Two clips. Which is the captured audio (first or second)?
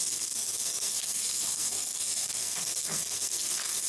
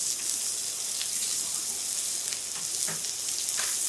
second